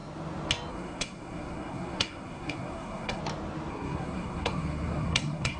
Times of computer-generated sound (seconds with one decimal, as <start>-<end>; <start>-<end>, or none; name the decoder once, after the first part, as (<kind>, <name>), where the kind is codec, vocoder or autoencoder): 0.7-3.2 (codec, SNAC); 3.7-5.6